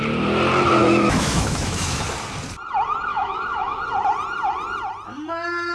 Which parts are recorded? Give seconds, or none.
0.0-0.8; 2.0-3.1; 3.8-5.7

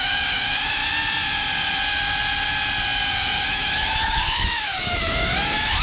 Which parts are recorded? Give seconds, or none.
0.8-3.5

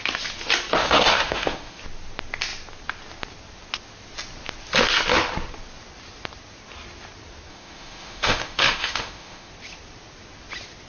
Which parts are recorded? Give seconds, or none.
0.0-0.8; 1.8-7.5; 9.5-10.9

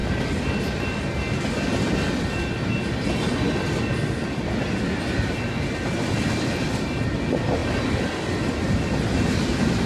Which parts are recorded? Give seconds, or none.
0.0-9.9

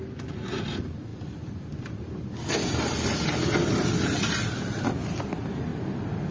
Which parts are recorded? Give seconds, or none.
0.0-6.3

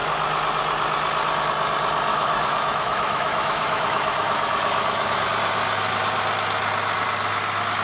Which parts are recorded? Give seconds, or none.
0.0-2.1; 5.2-7.8

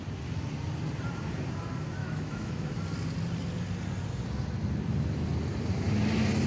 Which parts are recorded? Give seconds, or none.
0.0-2.0; 2.7-6.5